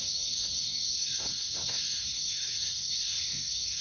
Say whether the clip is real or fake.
fake